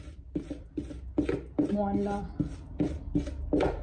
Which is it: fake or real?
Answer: real